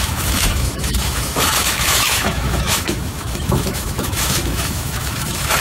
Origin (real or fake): fake